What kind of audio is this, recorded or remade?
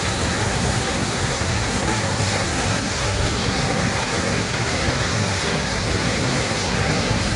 remade